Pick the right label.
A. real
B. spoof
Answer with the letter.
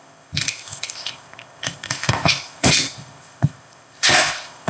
B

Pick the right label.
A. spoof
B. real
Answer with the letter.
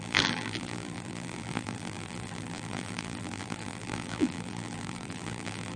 A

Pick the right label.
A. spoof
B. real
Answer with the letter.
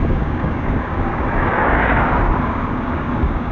A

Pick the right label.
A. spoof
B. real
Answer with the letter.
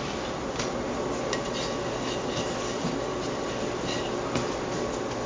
B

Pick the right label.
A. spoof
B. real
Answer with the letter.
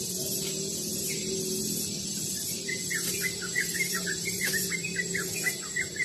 B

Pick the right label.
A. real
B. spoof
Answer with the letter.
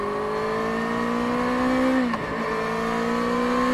A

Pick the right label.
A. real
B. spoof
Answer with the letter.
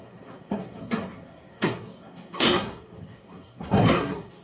B